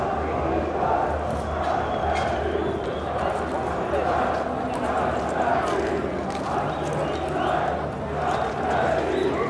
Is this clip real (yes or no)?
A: yes